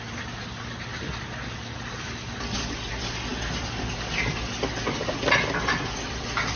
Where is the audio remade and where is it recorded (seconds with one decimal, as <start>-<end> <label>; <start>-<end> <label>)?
0.0-6.6 recorded